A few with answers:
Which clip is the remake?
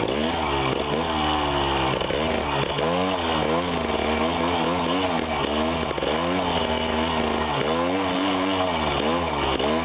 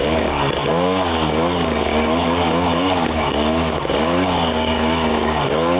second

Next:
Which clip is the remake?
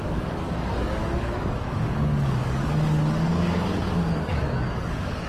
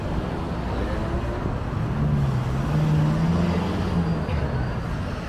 first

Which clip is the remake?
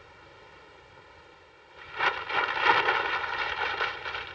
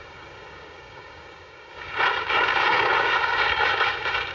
second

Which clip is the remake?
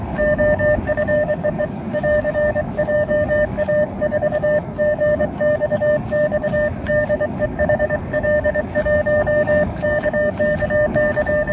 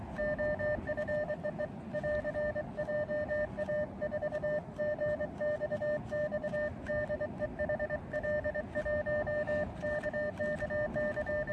first